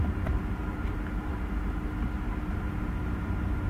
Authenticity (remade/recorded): recorded